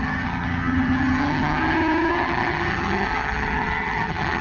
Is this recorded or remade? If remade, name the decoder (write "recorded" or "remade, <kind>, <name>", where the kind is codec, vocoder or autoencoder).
remade, vocoder, HiFi-GAN